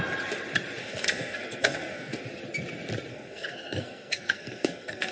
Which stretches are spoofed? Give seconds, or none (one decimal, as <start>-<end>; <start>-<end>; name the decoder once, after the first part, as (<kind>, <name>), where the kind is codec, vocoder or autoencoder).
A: 0.8-2.2 (codec, SNAC); 3.1-5.1